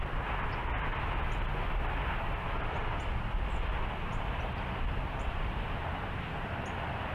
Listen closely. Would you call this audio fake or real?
fake